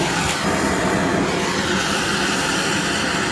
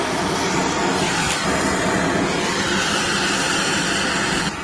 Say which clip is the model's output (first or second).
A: first